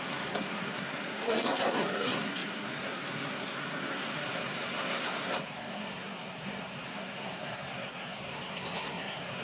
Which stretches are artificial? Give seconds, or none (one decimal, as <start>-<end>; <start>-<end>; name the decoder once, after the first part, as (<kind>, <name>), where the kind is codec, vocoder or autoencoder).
0.0-9.4 (codec, SNAC)